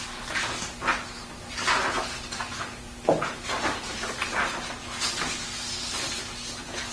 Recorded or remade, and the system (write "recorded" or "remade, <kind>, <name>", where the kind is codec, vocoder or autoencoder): recorded